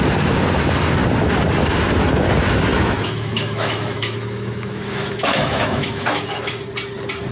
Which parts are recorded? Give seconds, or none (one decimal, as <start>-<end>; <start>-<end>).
0.0-2.7; 6.6-7.3